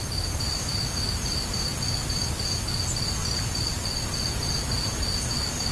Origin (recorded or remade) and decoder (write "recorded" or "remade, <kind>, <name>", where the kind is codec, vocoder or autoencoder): recorded